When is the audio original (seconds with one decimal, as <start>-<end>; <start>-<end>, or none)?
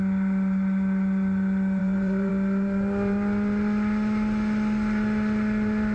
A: 0.0-1.8; 2.3-5.9